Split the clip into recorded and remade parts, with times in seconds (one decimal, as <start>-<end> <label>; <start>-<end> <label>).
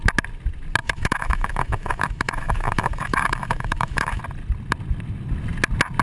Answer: 0.0-0.8 recorded; 0.8-4.2 remade; 4.2-6.0 recorded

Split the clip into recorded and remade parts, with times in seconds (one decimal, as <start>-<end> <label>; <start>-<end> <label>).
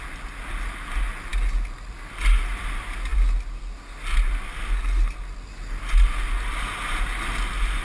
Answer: 0.0-7.8 recorded